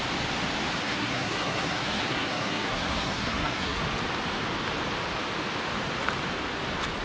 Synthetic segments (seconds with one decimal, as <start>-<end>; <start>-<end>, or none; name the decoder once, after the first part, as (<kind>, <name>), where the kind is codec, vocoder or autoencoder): 0.8-3.8 (codec, SNAC)